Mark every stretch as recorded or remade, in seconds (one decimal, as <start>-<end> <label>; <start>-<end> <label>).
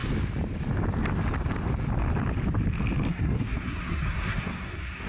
0.0-3.1 recorded; 3.1-5.1 remade